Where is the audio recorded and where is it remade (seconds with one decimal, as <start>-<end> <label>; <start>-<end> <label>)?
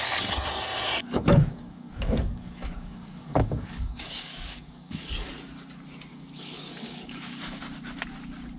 0.0-1.0 recorded; 1.0-5.3 remade; 5.3-6.1 recorded; 6.1-7.6 remade; 7.6-8.6 recorded